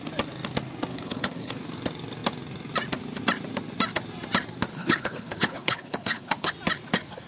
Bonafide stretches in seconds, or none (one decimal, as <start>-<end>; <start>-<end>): 0.0-0.9; 1.5-4.7; 6.5-7.3